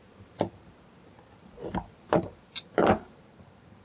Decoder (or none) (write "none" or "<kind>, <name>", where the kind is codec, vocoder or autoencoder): vocoder, BigVGAN v2